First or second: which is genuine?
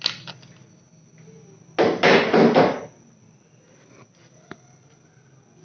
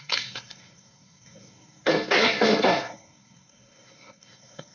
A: first